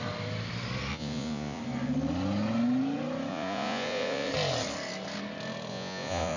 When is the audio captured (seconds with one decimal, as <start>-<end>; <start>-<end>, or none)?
0.0-0.9; 1.6-3.3; 4.3-5.7